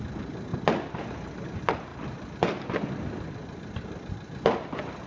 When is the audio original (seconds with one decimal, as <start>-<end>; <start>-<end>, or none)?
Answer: 0.0-5.1